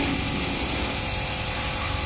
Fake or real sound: real